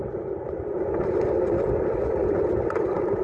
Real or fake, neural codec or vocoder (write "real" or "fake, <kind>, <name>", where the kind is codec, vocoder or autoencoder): fake, vocoder, BigVGAN v2